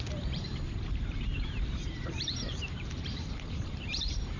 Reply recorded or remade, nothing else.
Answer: remade